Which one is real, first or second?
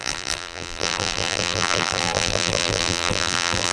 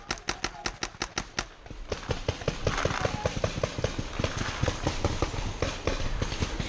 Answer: second